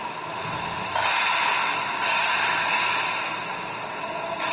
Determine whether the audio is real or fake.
real